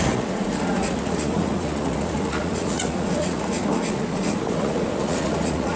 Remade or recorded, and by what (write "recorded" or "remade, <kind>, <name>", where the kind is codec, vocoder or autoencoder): remade, vocoder, Vocos